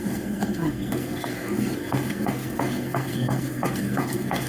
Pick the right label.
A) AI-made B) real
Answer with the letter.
A